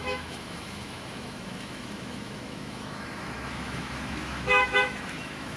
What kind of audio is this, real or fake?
fake